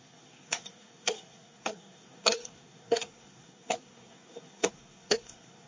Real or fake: fake